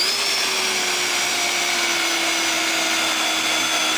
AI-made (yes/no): no